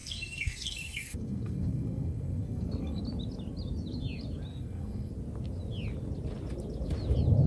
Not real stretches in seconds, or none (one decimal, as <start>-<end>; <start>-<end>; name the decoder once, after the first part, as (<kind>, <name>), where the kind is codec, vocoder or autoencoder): 0.0-3.0 (codec, SNAC); 4.5-5.1